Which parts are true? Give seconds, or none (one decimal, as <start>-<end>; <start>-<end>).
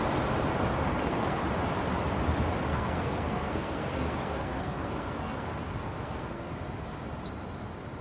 0.0-0.9; 1.4-2.7; 6.5-8.0